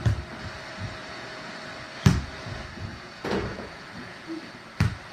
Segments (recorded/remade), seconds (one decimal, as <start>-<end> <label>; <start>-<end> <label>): 0.0-1.0 recorded; 1.0-1.5 remade; 1.5-2.9 recorded; 2.9-4.5 remade; 4.5-5.1 recorded